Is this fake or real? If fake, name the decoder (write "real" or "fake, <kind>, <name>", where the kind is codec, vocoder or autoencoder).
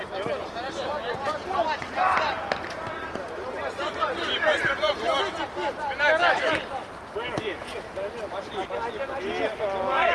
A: real